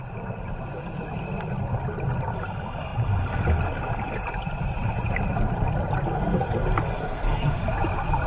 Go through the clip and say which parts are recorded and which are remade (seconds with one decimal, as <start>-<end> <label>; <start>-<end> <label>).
0.0-7.0 recorded; 7.0-7.6 remade; 7.6-8.3 recorded